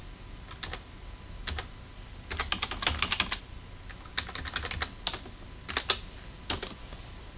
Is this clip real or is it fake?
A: real